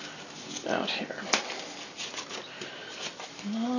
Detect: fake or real real